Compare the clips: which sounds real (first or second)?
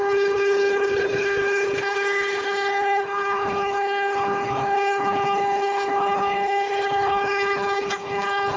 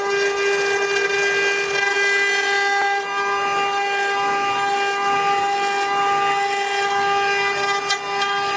second